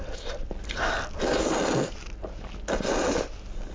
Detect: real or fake real